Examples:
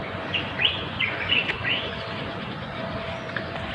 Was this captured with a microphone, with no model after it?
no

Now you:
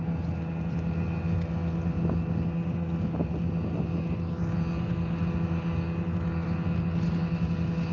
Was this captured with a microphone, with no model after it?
yes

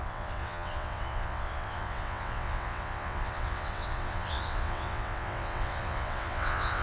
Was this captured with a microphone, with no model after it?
no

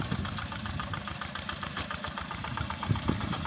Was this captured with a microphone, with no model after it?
no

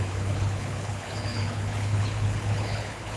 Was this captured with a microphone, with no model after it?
no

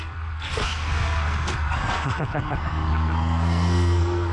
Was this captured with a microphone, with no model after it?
no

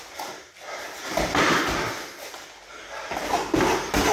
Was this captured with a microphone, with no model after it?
yes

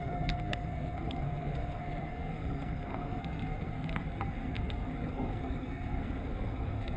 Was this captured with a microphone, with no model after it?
no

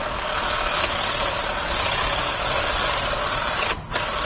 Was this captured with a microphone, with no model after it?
yes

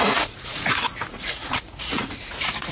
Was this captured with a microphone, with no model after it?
no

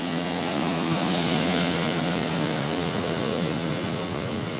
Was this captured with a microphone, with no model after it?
no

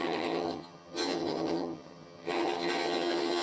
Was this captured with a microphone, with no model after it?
no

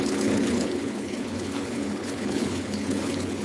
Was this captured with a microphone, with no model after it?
no